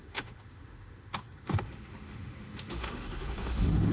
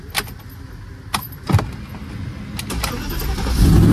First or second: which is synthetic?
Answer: first